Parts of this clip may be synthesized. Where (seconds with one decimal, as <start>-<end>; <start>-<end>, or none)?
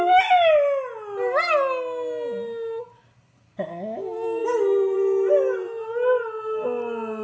4.4-5.3